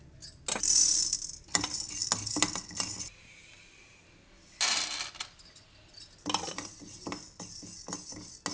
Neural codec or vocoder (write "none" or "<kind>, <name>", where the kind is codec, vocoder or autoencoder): none